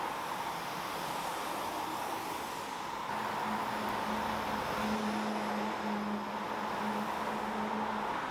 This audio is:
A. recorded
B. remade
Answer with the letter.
A